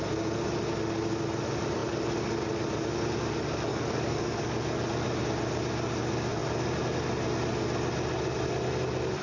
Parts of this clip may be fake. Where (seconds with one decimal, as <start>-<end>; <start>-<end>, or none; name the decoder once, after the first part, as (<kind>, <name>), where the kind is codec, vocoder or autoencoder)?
3.7-4.4 (codec, DAC)